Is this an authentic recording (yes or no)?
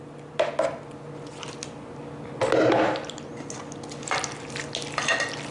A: yes